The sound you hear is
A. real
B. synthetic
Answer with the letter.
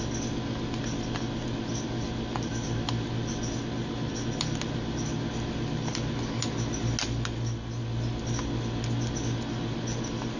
A